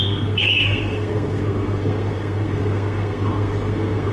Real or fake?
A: fake